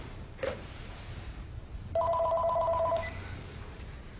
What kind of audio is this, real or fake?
fake